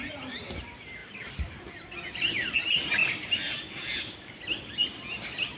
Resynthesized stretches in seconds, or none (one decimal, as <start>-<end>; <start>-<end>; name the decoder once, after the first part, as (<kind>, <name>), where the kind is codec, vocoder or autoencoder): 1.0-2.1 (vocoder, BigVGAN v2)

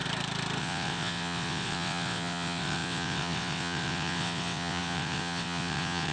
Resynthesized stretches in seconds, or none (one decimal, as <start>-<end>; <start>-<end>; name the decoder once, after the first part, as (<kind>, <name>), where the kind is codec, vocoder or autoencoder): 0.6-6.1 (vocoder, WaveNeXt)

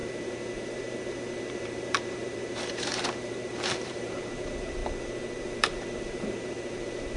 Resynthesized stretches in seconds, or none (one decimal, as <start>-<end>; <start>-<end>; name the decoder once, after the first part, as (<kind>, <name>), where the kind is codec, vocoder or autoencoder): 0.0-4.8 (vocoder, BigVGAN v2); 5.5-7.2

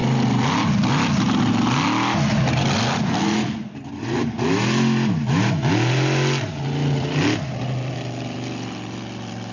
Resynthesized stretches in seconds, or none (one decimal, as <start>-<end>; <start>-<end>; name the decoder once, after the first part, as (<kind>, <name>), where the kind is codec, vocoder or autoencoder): none

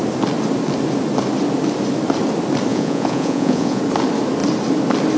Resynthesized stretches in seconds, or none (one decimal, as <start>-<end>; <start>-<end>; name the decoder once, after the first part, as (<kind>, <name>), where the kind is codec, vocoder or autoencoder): 2.7-3.8 (vocoder, Vocos)